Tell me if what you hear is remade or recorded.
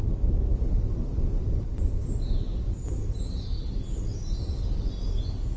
recorded